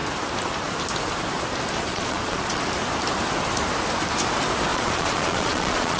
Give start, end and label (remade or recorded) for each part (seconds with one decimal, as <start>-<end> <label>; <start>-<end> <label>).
0.0-1.9 recorded; 1.9-2.6 remade; 2.6-4.7 recorded; 4.7-6.0 remade